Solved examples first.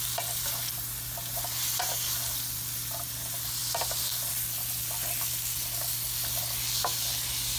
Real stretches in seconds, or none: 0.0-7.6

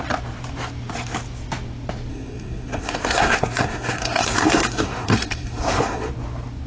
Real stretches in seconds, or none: 0.0-2.1; 6.1-6.7

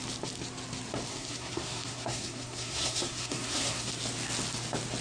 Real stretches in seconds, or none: 0.0-1.1; 3.9-5.0

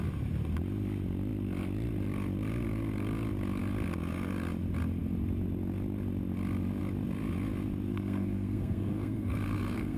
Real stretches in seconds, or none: 0.0-7.9